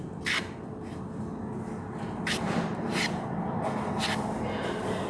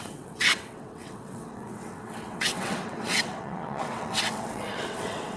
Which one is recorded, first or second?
first